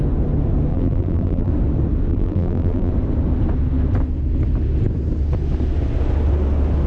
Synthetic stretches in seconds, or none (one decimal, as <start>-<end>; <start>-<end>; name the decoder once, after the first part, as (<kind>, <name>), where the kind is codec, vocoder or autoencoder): 0.7-1.5 (vocoder, BigVGAN v2); 2.1-2.9